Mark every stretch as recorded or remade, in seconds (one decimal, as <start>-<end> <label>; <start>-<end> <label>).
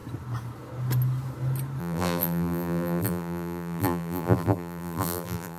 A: 0.0-1.8 recorded; 1.8-5.6 remade